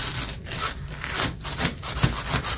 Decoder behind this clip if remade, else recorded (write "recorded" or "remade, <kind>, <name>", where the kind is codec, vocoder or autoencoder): recorded